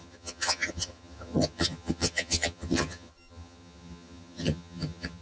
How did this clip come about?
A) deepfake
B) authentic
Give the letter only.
A